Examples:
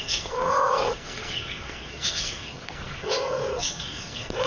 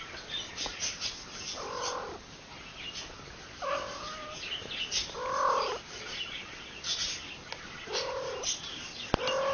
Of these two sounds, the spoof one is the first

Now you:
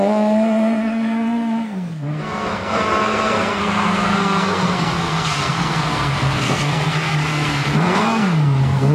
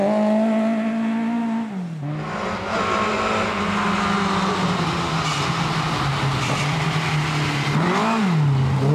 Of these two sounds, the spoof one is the first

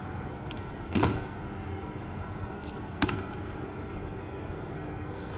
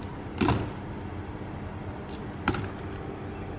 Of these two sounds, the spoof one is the first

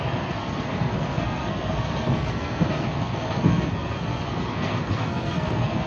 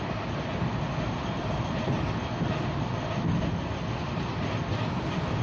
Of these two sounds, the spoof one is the first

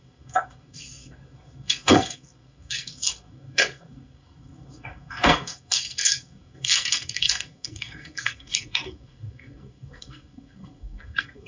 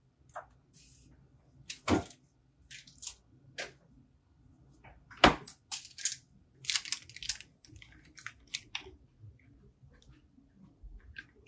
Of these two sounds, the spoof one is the first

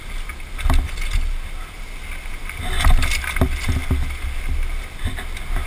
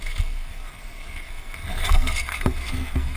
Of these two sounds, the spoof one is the second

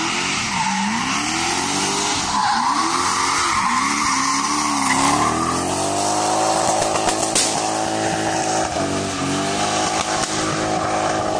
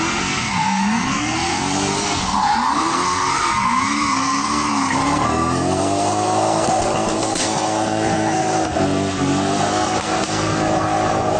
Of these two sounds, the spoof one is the second